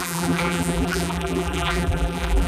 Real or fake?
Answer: fake